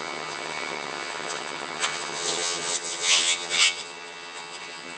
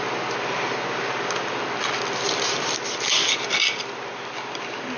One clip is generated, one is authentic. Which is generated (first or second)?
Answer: first